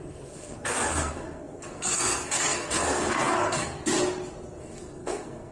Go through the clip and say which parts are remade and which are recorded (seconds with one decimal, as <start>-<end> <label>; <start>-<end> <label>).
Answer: 0.0-3.8 remade; 3.8-4.6 recorded; 4.6-5.5 remade

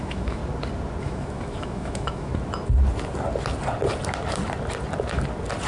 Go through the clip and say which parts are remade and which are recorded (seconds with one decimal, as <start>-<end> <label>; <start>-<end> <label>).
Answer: 0.0-0.4 remade; 0.4-1.0 recorded; 1.0-2.3 remade; 2.3-5.7 recorded